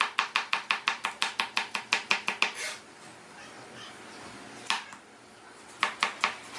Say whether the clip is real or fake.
real